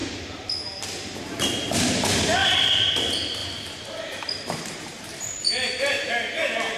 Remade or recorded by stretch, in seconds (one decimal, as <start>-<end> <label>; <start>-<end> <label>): 0.0-2.4 recorded; 2.4-2.9 remade; 2.9-3.4 recorded; 3.4-6.1 remade; 6.1-6.8 recorded